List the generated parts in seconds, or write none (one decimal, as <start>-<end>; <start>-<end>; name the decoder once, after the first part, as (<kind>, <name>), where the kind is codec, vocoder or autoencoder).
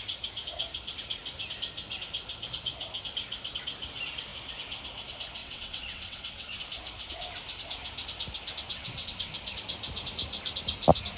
5.4-6.6 (vocoder, WaveNeXt); 8.7-9.3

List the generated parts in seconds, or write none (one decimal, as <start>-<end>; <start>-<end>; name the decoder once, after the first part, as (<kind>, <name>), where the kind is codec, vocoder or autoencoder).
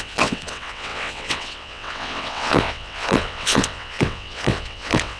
0.0-5.2 (vocoder, WaveNeXt)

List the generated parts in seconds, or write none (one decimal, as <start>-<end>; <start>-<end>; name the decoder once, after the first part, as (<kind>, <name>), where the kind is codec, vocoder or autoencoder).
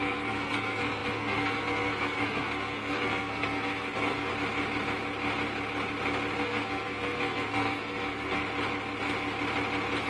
0.0-4.3 (codec, SNAC); 6.4-8.4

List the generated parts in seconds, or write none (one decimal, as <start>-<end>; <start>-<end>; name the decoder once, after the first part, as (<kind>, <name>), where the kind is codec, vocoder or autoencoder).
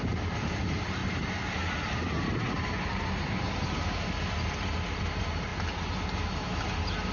none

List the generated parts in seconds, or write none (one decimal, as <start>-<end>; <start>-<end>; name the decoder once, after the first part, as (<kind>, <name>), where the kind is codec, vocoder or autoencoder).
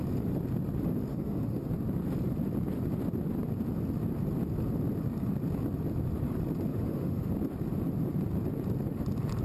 1.1-1.7 (autoencoder, DAC-VAE); 6.7-7.3